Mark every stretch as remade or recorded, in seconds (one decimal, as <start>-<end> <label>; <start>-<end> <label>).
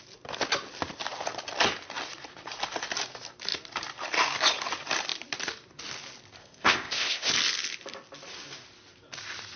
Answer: 0.0-6.4 recorded; 6.4-7.3 remade; 7.3-9.6 recorded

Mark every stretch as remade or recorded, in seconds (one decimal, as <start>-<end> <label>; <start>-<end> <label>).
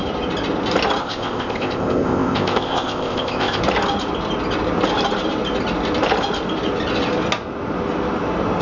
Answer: 0.0-1.0 recorded; 1.0-3.6 remade; 3.6-8.6 recorded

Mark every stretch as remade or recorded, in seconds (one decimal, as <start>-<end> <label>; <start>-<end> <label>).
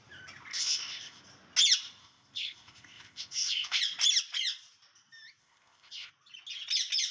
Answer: 0.0-0.5 recorded; 0.5-1.2 remade; 1.2-2.0 recorded; 2.0-3.8 remade; 3.8-5.4 recorded; 5.4-6.1 remade; 6.1-7.1 recorded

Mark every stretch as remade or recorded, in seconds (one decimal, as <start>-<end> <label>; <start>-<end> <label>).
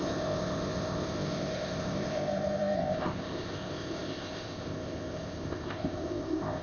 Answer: 0.0-6.6 remade